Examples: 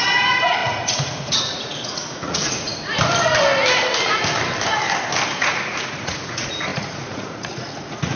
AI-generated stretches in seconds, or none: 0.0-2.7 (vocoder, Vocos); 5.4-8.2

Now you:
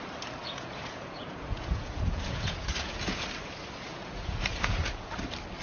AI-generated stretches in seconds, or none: 0.4-3.2 (vocoder, Vocos); 3.9-5.1

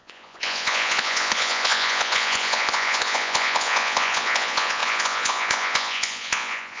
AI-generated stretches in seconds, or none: 0.0-6.8 (vocoder, Vocos)

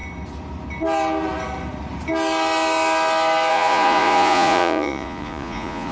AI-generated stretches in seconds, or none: 3.5-5.9 (vocoder, Vocos)

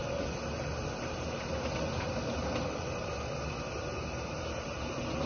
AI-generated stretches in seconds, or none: none

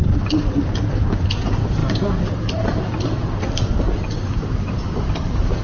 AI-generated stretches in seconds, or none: none

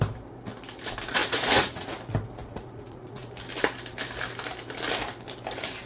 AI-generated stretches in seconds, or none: 1.2-2.0 (vocoder, Vocos); 2.4-3.3